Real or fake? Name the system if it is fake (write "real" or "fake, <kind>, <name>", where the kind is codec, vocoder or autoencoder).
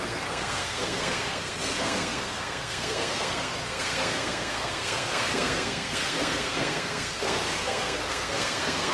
fake, codec, SNAC